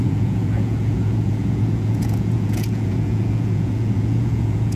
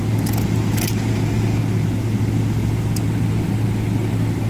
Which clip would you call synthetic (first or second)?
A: first